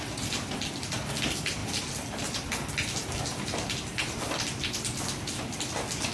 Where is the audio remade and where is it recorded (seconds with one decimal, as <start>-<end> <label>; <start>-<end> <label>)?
0.0-6.1 recorded